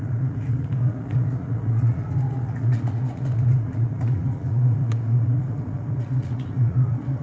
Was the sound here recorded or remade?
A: remade